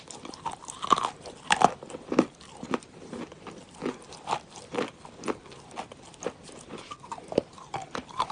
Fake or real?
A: real